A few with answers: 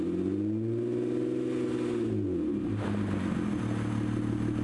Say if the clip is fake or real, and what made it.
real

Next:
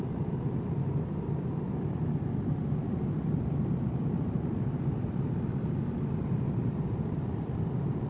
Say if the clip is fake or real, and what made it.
real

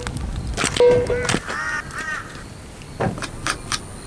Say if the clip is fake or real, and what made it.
real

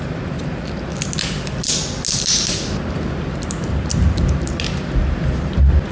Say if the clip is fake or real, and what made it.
real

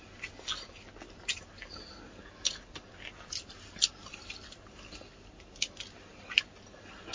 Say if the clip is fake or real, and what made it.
real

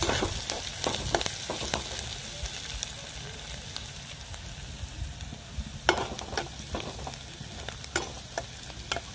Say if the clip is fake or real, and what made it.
real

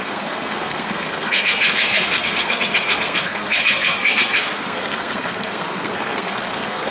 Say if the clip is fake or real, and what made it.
fake, codec, SNAC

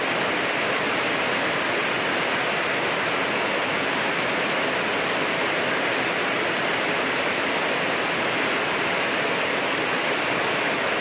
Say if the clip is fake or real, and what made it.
real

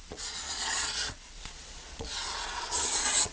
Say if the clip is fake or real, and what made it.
fake, vocoder, Vocos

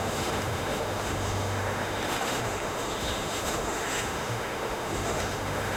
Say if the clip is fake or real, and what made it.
fake, autoencoder, DAC-VAE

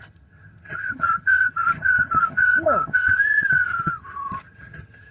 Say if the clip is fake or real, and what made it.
fake, vocoder, HiFi-GAN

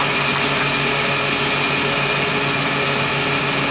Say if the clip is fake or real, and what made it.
real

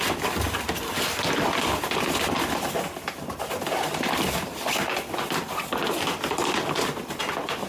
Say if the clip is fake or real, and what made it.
real